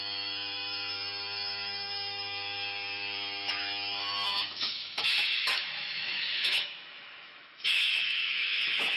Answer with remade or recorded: remade